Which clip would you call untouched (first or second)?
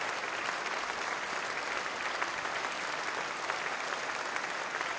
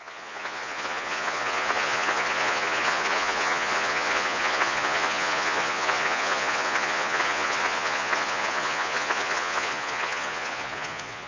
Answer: first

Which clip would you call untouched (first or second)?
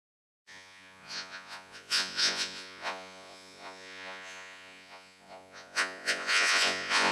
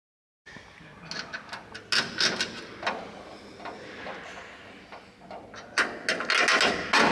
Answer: second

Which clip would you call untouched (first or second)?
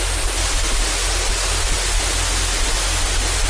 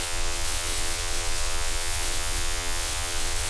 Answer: first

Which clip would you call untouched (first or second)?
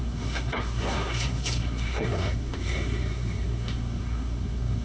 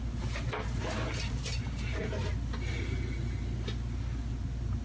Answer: second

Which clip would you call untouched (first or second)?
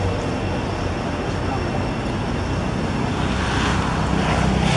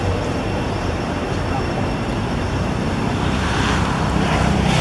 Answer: first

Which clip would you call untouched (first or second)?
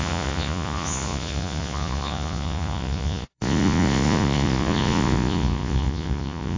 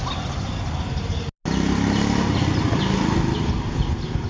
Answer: second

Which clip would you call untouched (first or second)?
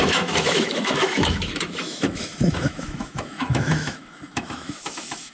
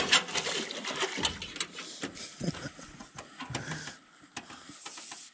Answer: second